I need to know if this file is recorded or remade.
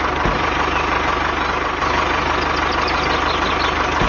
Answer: recorded